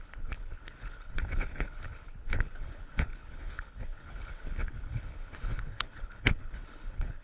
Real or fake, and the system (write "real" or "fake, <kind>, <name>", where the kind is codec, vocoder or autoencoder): fake, codec, HILCodec